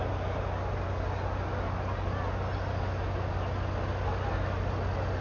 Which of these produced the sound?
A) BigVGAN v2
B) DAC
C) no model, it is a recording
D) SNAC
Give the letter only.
C